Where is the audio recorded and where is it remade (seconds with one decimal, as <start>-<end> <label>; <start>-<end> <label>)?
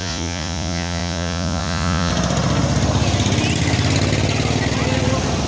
0.0-2.1 remade; 2.1-5.5 recorded